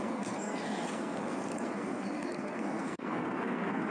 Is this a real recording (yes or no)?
no